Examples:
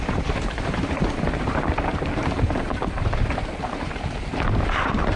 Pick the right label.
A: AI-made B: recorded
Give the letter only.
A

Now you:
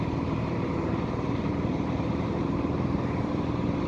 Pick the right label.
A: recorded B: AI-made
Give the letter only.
B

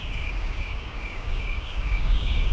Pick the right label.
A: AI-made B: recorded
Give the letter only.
A